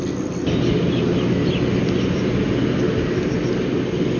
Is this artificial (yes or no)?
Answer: no